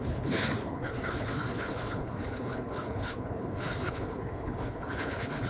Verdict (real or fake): fake